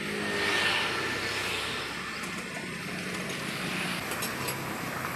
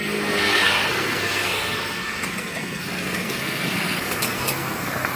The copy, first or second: second